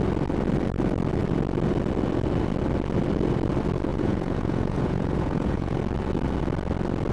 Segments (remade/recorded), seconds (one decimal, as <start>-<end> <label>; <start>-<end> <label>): 0.0-3.9 recorded; 3.9-5.8 remade; 5.8-7.1 recorded